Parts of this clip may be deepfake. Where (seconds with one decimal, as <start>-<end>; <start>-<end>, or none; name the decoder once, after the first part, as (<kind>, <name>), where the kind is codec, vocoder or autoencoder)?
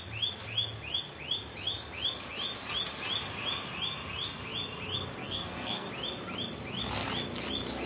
5.2-5.9 (codec, SNAC)